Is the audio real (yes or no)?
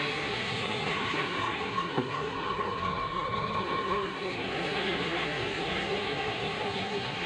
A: no